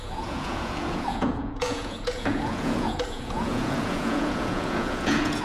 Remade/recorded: remade